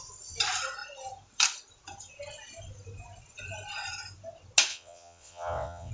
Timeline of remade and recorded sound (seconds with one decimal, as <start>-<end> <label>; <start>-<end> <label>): 0.0-4.7 recorded; 4.7-5.9 remade